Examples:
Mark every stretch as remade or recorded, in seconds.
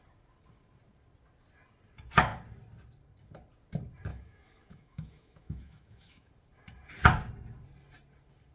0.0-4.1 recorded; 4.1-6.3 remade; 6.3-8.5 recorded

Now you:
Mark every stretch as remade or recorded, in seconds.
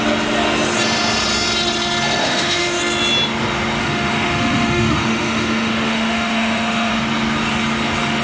0.0-2.2 recorded; 2.2-2.8 remade; 2.8-3.8 recorded; 3.8-6.9 remade; 6.9-8.2 recorded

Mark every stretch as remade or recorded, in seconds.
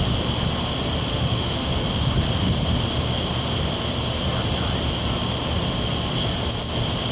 0.0-1.1 recorded; 1.1-1.7 remade; 1.7-7.1 recorded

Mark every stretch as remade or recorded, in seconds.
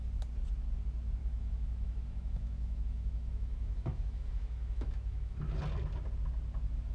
0.0-1.2 recorded; 1.2-5.3 remade; 5.3-6.9 recorded